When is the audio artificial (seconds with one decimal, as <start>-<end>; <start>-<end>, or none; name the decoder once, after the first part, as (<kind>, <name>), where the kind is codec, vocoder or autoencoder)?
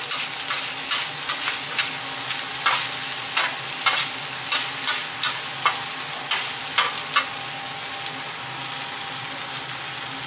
none